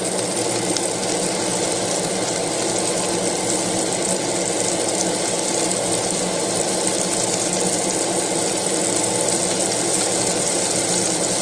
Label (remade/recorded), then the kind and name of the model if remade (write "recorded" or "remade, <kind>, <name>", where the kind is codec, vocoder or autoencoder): recorded